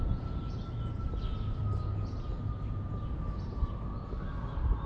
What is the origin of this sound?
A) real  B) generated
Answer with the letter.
A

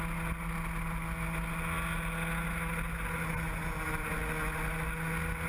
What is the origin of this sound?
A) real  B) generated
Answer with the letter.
A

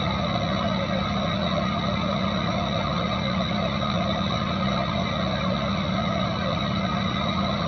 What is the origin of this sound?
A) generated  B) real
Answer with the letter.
A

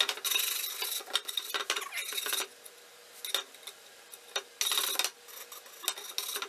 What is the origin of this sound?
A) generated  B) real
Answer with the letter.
B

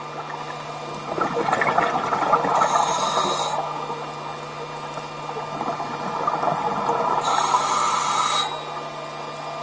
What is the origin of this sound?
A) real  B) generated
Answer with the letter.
A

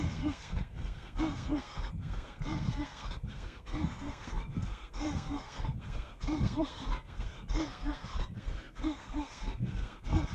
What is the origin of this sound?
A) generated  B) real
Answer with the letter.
A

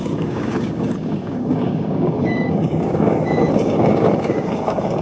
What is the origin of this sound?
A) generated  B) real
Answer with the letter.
A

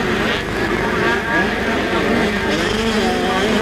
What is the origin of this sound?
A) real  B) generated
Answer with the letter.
A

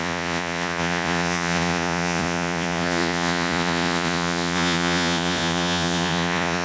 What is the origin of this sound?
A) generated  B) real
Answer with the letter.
A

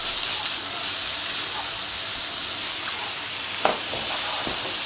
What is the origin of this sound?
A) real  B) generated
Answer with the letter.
B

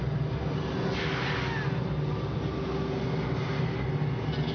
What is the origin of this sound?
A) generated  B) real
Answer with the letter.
B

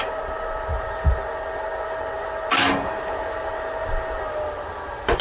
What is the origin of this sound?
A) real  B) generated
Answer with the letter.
A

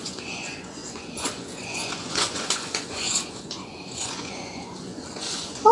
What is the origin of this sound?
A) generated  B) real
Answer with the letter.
A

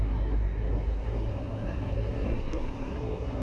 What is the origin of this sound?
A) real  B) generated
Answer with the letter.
B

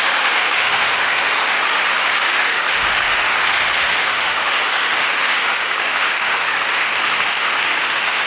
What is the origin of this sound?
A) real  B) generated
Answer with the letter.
B